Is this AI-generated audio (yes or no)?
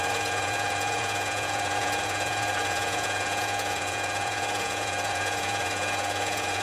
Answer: yes